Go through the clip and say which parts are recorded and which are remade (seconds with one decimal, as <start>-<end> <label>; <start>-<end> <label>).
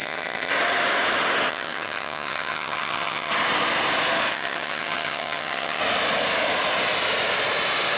0.0-0.5 remade; 0.5-1.5 recorded; 1.5-3.3 remade; 3.3-4.3 recorded; 4.3-5.8 remade; 5.8-8.0 recorded